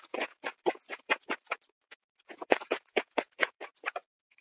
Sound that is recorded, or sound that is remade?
remade